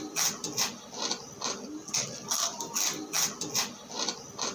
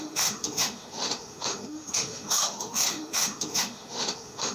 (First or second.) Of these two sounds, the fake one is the second